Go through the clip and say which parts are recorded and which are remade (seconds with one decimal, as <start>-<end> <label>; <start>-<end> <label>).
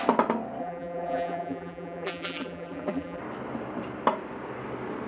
0.0-0.6 recorded; 0.6-3.2 remade; 3.2-5.1 recorded